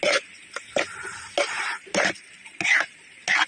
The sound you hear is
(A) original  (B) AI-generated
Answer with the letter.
A